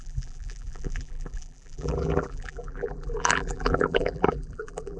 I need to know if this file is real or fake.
fake